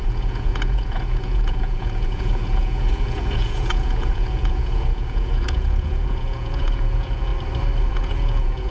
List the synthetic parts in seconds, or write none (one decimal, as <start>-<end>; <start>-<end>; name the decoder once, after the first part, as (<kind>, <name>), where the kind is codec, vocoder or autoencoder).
0.0-7.3 (vocoder, Vocos); 7.9-8.7